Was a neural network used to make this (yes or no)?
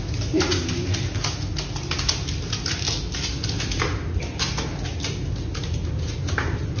no